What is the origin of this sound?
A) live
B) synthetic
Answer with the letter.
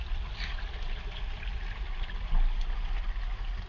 A